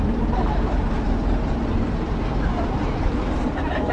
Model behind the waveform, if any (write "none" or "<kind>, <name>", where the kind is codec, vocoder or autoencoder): vocoder, BigVGAN v2